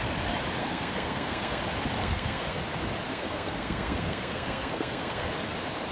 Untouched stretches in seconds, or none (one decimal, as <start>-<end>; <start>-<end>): 0.0-0.6; 1.6-2.0; 2.6-3.1; 5.3-5.9